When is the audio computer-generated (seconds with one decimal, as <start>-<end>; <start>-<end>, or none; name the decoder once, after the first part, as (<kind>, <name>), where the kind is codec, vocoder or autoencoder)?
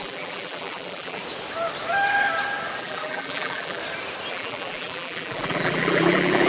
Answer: 0.0-1.2 (vocoder, BigVGAN v2); 2.8-3.8; 4.3-6.5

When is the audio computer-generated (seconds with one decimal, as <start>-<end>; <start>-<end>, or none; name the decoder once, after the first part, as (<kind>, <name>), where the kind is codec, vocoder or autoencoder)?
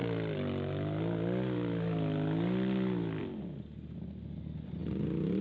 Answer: none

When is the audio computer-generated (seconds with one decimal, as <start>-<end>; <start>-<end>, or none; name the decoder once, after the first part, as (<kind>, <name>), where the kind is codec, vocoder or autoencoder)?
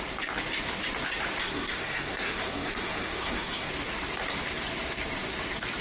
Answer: 1.4-3.7 (codec, SNAC)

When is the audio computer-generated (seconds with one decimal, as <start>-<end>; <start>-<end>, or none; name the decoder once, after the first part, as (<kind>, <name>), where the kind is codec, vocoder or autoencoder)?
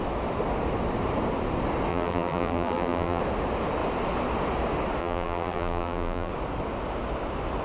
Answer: 1.9-3.2 (vocoder, BigVGAN v2); 5.0-6.3